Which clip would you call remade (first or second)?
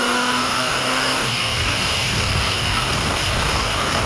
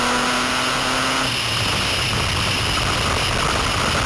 first